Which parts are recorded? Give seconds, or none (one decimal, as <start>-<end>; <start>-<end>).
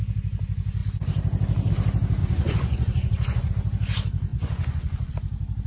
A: 0.0-2.2; 3.5-4.3; 5.1-5.7